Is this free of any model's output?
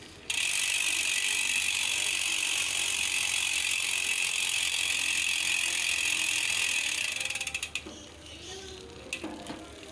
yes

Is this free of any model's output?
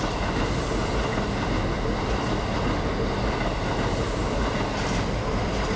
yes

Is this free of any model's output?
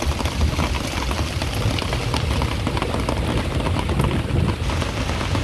yes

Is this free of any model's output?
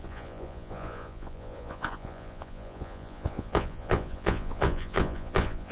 no